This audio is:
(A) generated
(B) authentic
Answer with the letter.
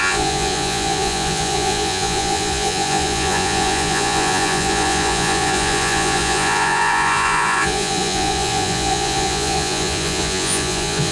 A